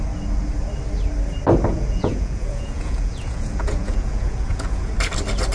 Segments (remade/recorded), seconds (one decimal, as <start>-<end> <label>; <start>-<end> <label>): 0.0-1.7 recorded; 1.7-4.9 remade; 4.9-5.5 recorded